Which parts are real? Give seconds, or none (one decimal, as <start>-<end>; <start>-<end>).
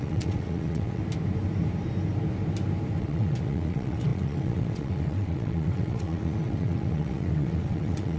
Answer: 1.0-3.0